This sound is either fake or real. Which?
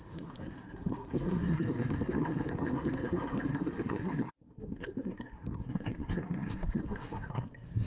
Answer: fake